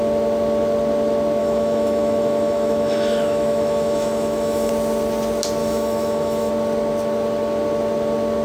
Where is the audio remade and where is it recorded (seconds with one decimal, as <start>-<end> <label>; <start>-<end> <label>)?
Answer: 0.0-1.4 recorded; 1.4-4.7 remade; 4.7-5.6 recorded; 5.6-6.5 remade; 6.5-8.4 recorded